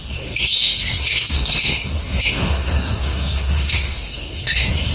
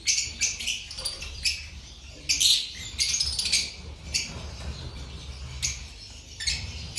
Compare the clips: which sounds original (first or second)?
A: second